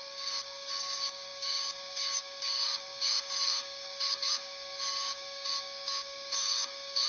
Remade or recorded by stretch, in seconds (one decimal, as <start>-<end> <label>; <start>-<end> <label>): 0.0-7.1 remade